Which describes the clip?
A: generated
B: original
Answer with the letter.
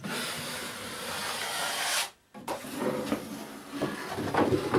B